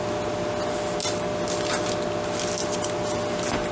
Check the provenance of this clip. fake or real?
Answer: real